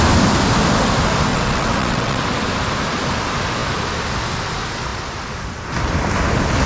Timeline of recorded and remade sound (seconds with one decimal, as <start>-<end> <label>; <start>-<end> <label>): 0.0-1.3 recorded; 1.3-2.2 remade; 2.2-6.7 recorded